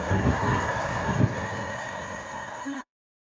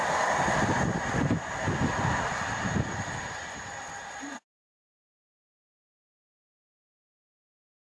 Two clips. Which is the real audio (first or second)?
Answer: second